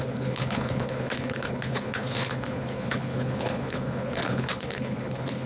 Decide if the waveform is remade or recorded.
remade